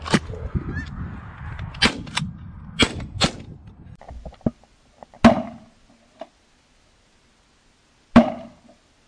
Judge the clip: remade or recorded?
recorded